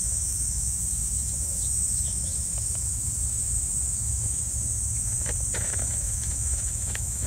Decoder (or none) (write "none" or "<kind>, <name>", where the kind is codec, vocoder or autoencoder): autoencoder, DAC-VAE